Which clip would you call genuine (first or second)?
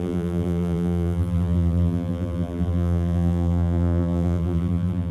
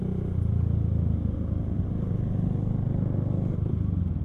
second